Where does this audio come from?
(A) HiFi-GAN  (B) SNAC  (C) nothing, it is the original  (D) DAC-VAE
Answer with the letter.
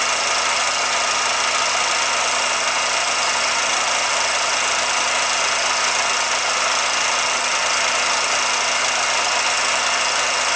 C